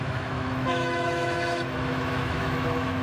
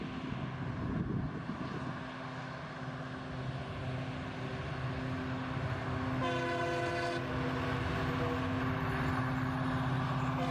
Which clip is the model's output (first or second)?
first